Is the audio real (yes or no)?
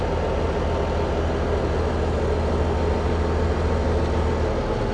yes